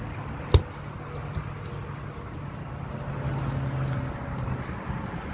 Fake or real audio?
real